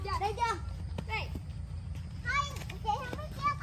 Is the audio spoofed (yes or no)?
no